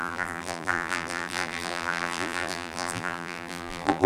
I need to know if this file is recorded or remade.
remade